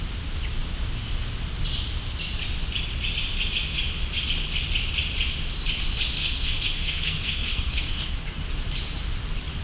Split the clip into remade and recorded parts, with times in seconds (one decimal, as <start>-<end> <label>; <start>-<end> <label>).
0.0-6.2 recorded; 6.2-8.4 remade; 8.4-9.6 recorded